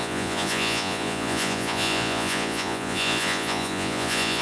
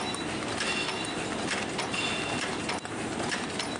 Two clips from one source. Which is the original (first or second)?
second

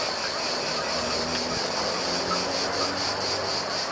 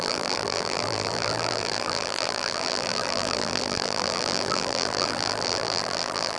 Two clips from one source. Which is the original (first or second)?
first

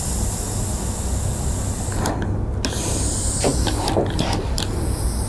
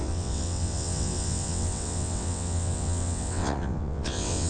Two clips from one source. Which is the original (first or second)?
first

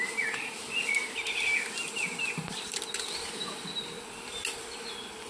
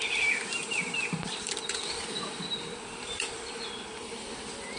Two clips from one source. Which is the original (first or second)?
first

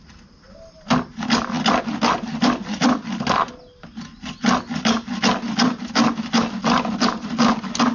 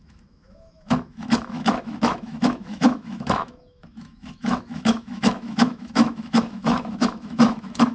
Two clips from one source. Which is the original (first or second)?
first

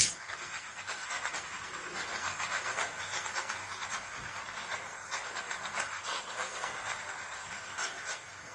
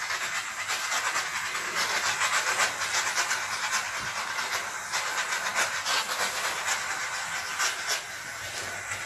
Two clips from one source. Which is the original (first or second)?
second